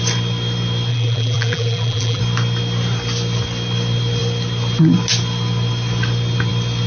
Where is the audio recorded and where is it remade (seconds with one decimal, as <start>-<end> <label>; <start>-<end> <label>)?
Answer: 0.0-0.9 recorded; 0.9-2.2 remade; 2.2-6.9 recorded